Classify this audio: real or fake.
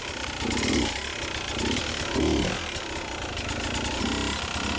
real